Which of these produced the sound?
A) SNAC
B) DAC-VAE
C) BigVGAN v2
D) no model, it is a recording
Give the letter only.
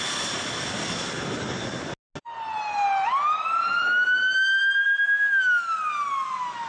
D